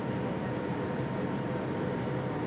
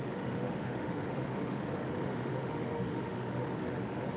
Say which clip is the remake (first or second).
second